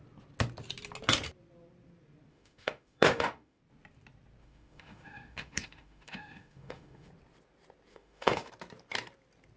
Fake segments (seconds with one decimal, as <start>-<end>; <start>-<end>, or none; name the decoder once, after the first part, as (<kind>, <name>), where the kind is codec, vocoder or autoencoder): 2.3-3.6 (autoencoder, DAC-VAE); 4.4-7.1; 7.9-8.5